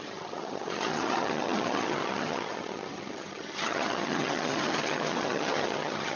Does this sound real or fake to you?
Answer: fake